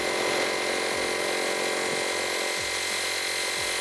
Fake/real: real